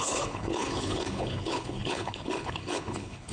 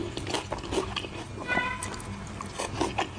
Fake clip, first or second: first